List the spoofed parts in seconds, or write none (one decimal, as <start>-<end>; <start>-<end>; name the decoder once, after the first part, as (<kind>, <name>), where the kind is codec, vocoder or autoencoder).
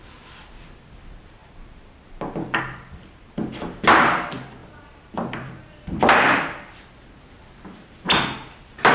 none